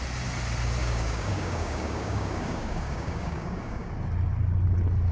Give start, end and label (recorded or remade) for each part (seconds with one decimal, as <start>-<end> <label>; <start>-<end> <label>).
0.0-0.8 recorded; 0.8-3.9 remade; 3.9-5.1 recorded